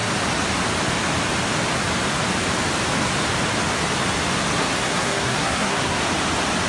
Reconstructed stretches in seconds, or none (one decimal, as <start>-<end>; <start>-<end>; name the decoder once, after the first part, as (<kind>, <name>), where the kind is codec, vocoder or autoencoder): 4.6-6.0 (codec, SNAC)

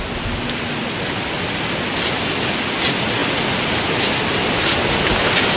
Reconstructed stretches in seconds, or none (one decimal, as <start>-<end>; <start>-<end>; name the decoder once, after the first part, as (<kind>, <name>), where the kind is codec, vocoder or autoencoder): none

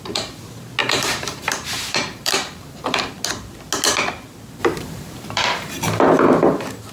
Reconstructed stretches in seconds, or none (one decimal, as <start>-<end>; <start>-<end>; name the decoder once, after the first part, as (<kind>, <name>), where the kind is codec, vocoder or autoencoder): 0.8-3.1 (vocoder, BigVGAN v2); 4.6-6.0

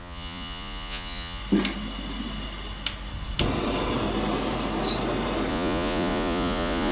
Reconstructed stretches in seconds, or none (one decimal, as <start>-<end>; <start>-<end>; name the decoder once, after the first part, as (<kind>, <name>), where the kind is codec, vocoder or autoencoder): 0.0-1.4 (vocoder, Vocos); 5.5-6.9

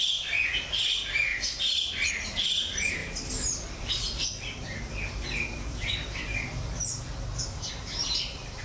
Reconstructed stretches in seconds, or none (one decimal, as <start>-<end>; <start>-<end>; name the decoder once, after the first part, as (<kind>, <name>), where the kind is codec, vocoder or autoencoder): 3.0-6.7 (vocoder, BigVGAN v2); 8.0-8.6

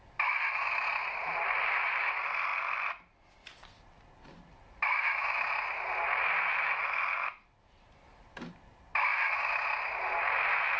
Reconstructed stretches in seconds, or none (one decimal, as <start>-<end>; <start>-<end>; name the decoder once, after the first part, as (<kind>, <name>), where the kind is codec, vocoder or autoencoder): 1.2-1.9 (vocoder, BigVGAN v2)

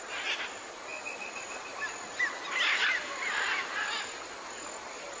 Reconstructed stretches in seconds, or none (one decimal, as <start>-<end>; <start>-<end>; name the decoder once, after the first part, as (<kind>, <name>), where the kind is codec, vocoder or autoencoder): none

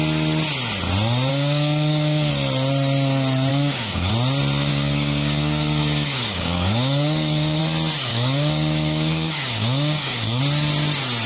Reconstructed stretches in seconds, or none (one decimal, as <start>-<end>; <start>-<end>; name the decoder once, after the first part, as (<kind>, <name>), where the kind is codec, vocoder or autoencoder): 1.3-2.3 (codec, DAC); 3.5-4.1; 4.7-7.6; 8.1-10.4